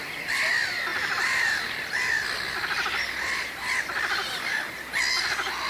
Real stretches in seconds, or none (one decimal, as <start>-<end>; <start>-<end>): 0.0-0.9; 1.6-5.7